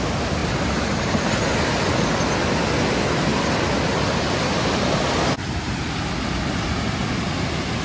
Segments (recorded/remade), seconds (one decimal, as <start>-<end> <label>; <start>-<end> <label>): 0.0-7.8 recorded